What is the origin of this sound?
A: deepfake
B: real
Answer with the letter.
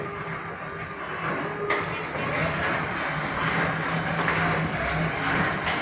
B